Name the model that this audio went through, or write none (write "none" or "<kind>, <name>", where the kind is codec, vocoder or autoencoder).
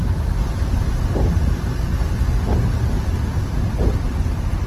none